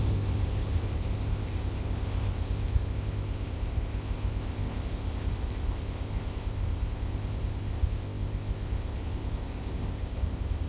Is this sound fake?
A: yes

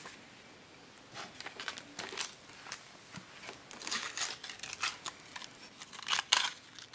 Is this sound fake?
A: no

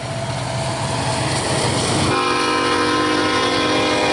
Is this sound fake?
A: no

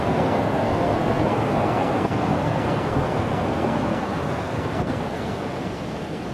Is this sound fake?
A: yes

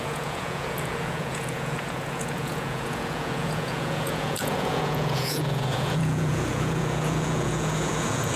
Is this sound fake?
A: yes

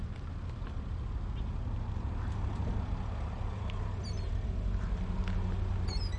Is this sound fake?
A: no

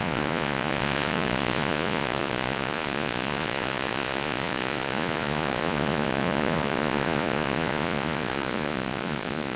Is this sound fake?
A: yes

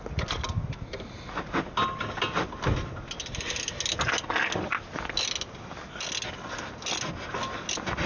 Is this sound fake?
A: no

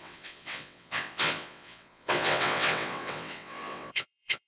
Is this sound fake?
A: yes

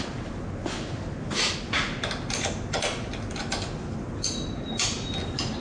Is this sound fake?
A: no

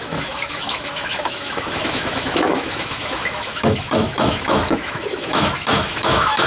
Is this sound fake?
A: yes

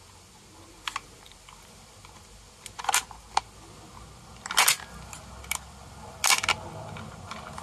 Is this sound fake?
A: no